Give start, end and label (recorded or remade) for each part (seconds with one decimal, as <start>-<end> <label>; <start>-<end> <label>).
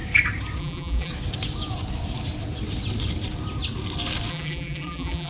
0.0-0.6 recorded; 0.6-1.1 remade; 1.1-4.3 recorded; 4.3-5.3 remade